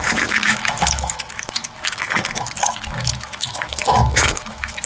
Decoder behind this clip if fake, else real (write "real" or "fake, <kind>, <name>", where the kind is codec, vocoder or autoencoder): fake, autoencoder, DAC-VAE